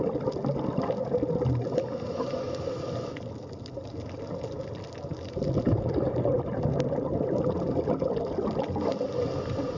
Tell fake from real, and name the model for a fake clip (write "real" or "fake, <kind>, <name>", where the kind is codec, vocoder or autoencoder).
real